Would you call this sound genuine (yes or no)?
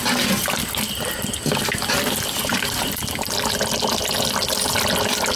yes